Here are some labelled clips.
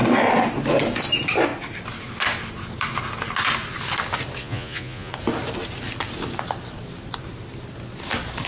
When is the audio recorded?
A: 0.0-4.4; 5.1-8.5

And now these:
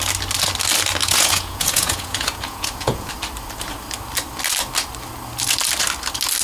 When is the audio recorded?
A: 0.0-1.0; 3.1-6.4

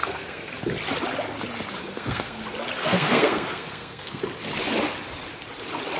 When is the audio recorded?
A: 0.5-1.8; 2.4-2.8; 4.2-6.0

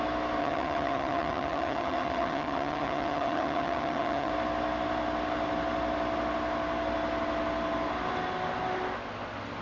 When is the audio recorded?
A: 0.0-0.4; 4.3-9.6